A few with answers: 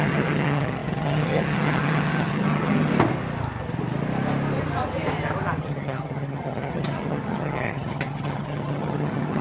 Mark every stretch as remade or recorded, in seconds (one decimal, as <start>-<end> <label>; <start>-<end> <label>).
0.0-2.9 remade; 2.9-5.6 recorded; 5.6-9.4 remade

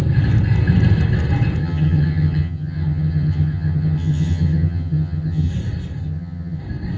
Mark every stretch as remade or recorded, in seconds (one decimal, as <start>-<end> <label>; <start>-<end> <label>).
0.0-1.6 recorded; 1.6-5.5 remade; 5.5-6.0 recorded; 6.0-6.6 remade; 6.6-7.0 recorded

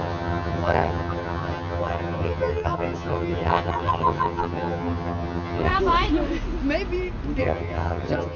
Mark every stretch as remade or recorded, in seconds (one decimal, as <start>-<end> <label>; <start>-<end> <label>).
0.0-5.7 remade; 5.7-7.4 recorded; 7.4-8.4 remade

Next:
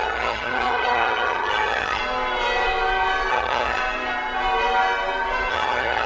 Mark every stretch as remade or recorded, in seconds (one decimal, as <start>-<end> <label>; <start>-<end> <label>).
0.0-2.0 remade; 2.0-3.3 recorded; 3.3-3.8 remade; 3.8-5.5 recorded; 5.5-6.1 remade